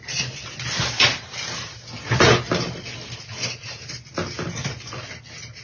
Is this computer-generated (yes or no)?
no